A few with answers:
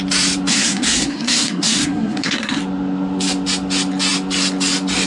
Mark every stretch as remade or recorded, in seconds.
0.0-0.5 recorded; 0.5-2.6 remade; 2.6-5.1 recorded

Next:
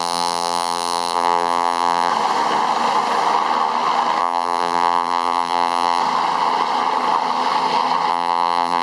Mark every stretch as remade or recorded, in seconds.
0.0-2.1 remade; 2.1-4.2 recorded; 4.2-6.0 remade; 6.0-8.1 recorded; 8.1-8.8 remade

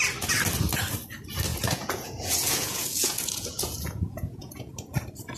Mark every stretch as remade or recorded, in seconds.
0.0-1.5 recorded; 1.5-4.7 remade; 4.7-5.4 recorded

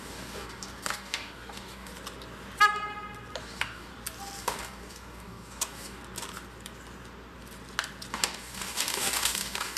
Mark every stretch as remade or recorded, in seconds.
0.0-1.9 remade; 1.9-3.4 recorded; 3.4-3.9 remade; 3.9-4.4 recorded; 4.4-6.0 remade; 6.0-8.1 recorded; 8.1-9.8 remade

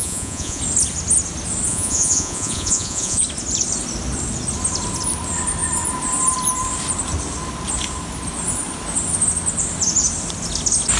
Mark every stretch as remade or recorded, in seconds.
0.0-0.6 remade; 0.6-1.7 recorded; 1.7-3.2 remade; 3.2-11.0 recorded

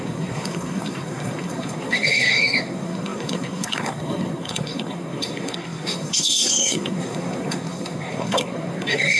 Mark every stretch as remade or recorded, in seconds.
0.0-9.2 remade

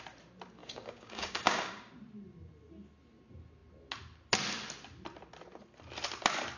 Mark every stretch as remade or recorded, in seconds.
0.0-0.6 recorded; 0.6-1.9 remade; 1.9-6.6 recorded

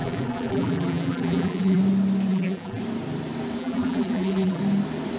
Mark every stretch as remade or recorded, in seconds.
0.0-1.8 remade; 1.8-2.3 recorded; 2.3-2.8 remade; 2.8-3.6 recorded; 3.6-4.6 remade; 4.6-5.2 recorded